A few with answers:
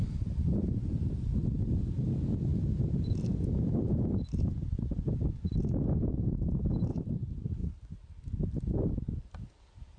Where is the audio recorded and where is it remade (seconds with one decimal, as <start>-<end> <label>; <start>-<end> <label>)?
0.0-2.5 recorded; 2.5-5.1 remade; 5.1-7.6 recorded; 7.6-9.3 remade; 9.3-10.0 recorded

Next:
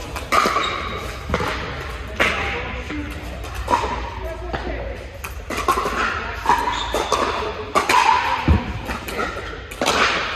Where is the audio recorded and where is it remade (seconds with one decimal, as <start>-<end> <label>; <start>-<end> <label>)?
0.0-10.4 recorded

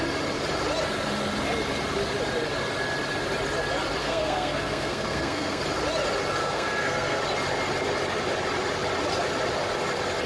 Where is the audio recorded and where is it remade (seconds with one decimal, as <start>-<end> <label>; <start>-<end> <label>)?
0.0-4.0 recorded; 4.0-5.6 remade; 5.6-6.4 recorded; 6.4-7.2 remade; 7.2-10.3 recorded

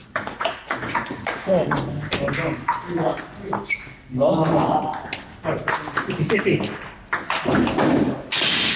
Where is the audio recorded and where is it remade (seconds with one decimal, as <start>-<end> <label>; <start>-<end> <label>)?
0.0-1.9 remade; 1.9-8.8 recorded